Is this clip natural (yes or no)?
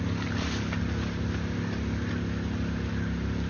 yes